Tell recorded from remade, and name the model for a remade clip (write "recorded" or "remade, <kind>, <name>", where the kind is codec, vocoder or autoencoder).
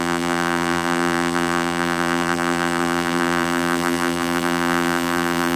remade, vocoder, BigVGAN v2